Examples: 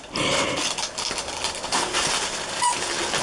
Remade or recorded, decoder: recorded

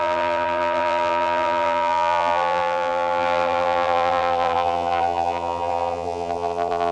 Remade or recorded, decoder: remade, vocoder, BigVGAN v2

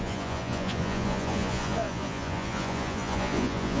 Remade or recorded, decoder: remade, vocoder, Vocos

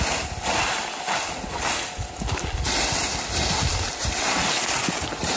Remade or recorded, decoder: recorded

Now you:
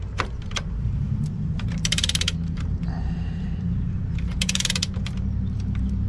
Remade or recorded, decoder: remade, vocoder, BigVGAN v2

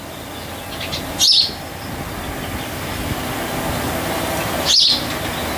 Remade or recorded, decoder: recorded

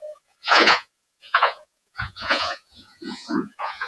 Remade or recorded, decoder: remade, vocoder, Vocos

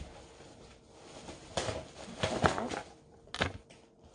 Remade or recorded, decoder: recorded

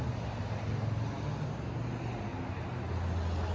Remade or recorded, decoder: recorded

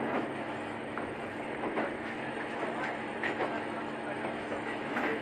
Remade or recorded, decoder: remade, autoencoder, DAC-VAE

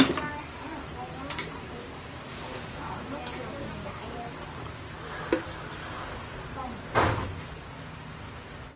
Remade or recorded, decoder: recorded